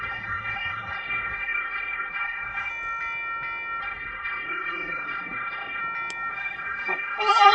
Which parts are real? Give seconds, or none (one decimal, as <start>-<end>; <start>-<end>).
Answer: 2.7-3.8; 5.8-6.3